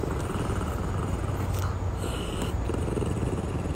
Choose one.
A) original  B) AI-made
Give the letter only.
A